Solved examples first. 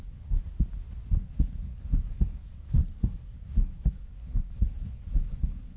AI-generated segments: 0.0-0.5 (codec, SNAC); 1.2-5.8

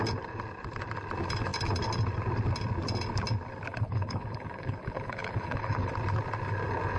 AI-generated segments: 3.7-5.9 (codec, HILCodec)

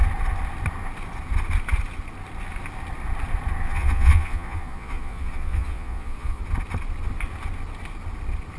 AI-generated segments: 3.6-6.4 (vocoder, Vocos)